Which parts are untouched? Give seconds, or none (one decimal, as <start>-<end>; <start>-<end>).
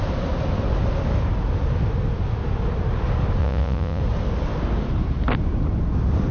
0.0-3.4; 4.0-6.3